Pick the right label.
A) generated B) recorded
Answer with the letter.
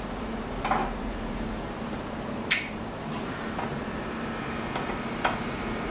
A